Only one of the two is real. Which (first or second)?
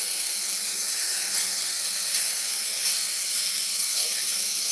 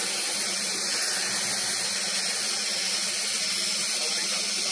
second